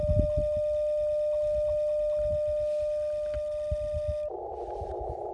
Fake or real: real